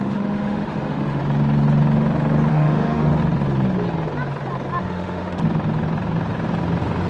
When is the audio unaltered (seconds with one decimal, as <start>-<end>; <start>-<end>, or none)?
1.2-2.5; 3.1-4.8; 5.4-7.1